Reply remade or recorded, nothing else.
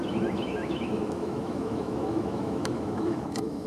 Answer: remade